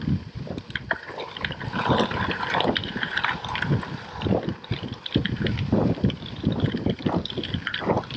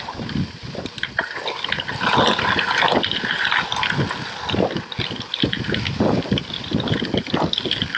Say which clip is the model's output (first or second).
first